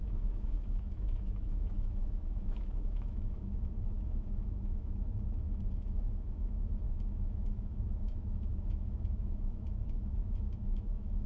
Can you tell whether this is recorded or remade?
remade